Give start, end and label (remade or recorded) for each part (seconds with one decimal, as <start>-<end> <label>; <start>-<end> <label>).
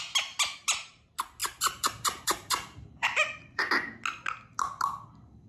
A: 0.0-1.4 recorded; 1.4-3.6 remade; 3.6-5.5 recorded